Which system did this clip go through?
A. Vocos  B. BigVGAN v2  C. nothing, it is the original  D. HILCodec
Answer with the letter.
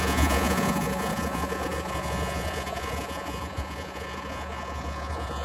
A